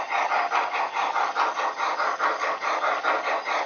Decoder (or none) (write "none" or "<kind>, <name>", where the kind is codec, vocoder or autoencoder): none